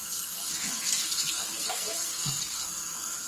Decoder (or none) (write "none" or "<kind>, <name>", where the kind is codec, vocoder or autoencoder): codec, SNAC